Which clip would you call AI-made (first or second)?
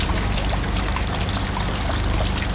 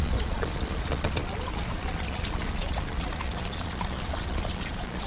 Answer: second